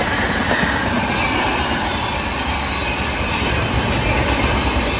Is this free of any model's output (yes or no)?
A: yes